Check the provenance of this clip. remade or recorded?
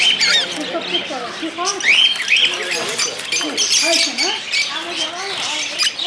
recorded